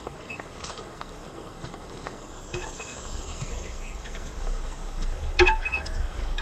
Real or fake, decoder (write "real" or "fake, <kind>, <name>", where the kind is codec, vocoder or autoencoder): fake, codec, SNAC